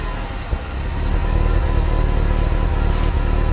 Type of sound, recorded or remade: recorded